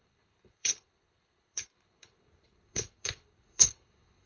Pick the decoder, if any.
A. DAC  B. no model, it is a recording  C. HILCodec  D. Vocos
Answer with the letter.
C